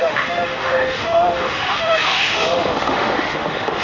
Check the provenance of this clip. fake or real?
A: fake